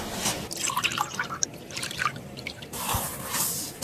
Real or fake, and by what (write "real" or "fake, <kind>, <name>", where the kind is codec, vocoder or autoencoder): fake, vocoder, BigVGAN v2